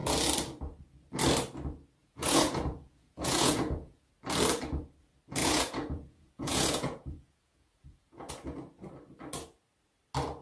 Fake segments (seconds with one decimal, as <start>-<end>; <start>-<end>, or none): 2.0-4.1; 5.4-8.3